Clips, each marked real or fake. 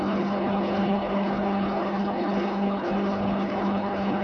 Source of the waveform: fake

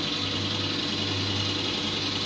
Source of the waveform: real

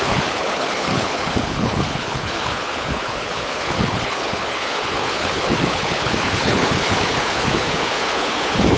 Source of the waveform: fake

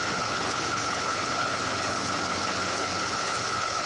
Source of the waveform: fake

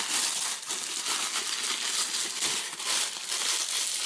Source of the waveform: real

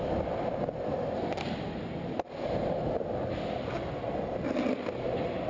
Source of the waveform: real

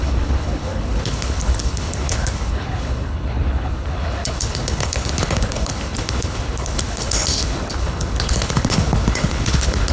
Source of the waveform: fake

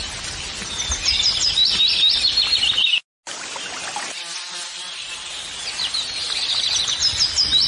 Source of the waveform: real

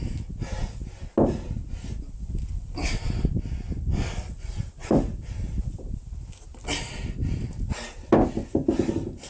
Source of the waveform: real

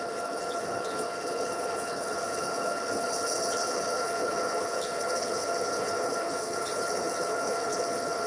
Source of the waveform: fake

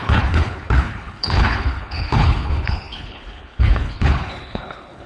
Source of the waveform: fake